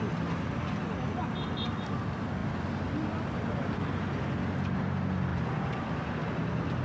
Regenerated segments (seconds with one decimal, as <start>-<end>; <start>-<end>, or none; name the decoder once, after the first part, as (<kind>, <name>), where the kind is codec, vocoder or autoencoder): none